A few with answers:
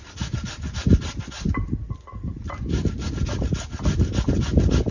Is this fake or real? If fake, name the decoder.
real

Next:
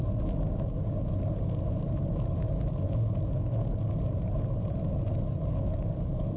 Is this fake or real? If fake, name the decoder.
real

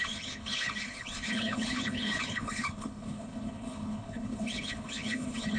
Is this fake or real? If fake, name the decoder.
fake, codec, HILCodec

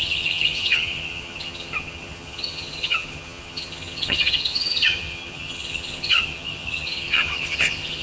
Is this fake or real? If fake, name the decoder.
fake, vocoder, HiFi-GAN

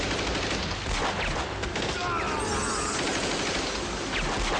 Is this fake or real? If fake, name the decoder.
real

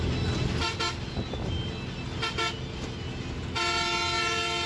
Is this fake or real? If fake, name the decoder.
real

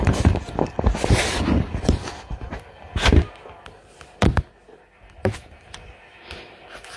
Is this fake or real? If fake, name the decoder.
real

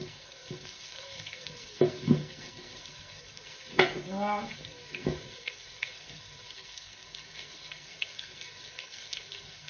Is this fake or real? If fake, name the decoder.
fake, codec, SNAC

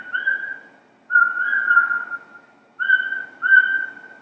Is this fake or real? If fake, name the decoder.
real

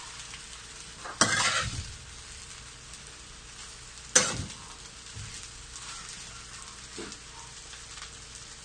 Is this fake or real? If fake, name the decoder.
real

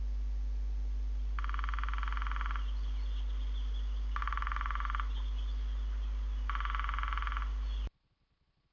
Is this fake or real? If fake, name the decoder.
real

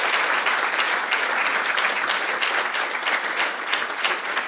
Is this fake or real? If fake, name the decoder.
real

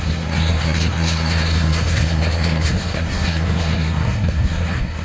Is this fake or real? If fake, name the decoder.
fake, codec, SNAC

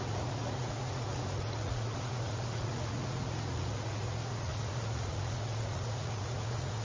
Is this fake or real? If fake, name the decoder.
fake, vocoder, Vocos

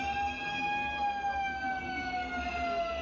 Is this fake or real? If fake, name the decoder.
real